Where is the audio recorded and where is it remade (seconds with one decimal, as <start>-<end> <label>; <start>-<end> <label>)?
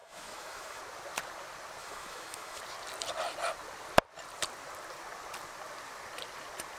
0.0-0.8 remade; 0.8-1.8 recorded; 1.8-2.6 remade; 2.6-6.8 recorded